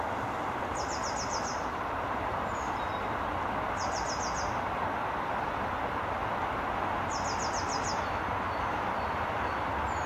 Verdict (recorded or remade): recorded